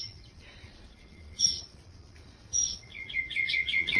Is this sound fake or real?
fake